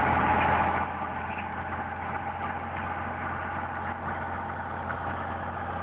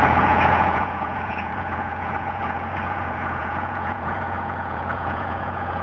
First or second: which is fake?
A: second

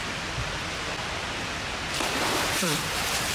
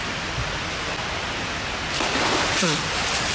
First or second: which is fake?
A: first